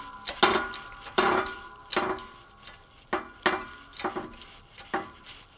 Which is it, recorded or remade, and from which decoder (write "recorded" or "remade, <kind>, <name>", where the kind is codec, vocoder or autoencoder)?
recorded